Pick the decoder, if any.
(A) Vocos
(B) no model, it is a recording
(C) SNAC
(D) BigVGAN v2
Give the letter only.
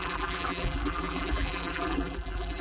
D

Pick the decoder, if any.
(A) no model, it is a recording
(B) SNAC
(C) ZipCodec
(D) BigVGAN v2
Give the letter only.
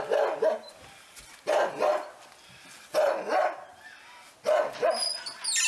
A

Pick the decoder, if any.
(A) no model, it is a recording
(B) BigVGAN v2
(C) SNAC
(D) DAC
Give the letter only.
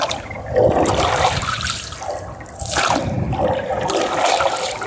B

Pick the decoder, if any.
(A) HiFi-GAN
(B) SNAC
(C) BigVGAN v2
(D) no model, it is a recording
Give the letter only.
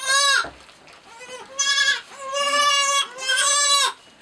D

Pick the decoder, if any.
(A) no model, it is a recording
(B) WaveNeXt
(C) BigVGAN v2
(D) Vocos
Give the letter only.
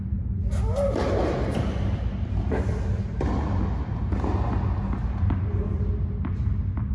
A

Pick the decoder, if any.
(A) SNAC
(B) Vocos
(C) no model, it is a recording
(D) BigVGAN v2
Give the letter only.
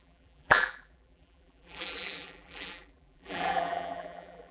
D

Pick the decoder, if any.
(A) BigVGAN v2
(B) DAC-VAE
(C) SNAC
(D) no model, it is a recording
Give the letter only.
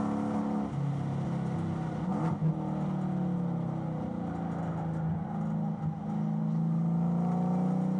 D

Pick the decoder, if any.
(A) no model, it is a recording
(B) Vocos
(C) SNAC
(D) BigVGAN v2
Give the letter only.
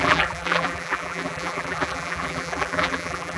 D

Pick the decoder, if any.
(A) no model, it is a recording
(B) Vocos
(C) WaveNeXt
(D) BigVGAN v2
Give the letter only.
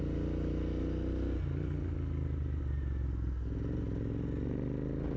A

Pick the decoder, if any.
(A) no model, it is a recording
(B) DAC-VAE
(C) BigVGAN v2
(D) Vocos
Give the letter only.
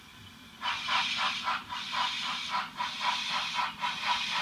A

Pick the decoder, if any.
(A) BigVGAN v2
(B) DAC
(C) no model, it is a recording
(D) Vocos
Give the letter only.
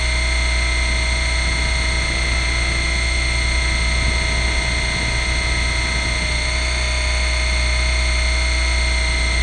C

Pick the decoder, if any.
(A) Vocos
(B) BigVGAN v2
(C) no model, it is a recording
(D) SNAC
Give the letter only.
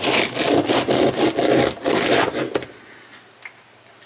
C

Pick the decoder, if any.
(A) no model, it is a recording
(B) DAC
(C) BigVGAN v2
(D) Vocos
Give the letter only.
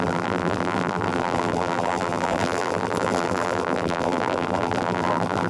C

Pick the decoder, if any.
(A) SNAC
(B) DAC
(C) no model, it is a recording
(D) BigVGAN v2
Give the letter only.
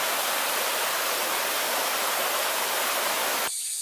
C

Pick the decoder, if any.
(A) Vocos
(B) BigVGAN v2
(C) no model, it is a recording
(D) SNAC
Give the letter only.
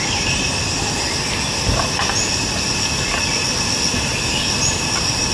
C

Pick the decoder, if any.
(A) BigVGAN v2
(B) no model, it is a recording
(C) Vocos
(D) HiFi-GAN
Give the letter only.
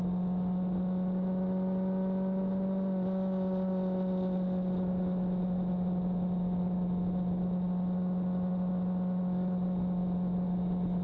B